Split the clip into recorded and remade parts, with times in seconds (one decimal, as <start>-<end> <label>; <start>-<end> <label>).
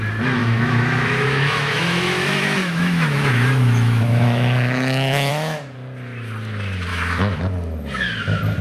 0.0-0.4 recorded; 0.4-5.3 remade; 5.3-6.9 recorded; 6.9-7.4 remade; 7.4-8.6 recorded